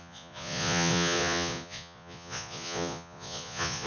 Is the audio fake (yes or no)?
yes